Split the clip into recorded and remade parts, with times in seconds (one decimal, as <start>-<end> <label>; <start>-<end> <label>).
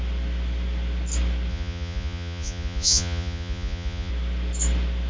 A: 0.0-1.5 recorded; 1.5-4.1 remade; 4.1-5.1 recorded